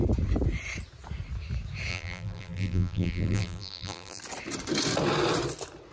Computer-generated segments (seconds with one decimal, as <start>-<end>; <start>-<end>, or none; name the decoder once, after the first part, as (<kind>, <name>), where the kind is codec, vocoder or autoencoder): 1.9-4.2 (vocoder, BigVGAN v2)